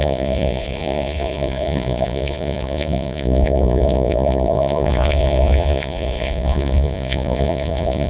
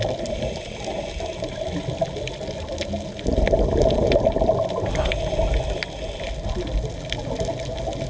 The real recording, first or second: second